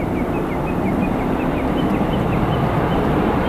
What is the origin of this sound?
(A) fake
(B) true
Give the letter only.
B